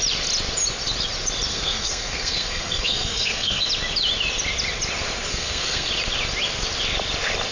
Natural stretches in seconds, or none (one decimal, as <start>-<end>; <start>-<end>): 0.0-1.5; 3.7-5.3; 5.9-7.5